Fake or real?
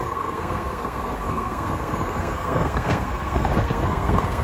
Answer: fake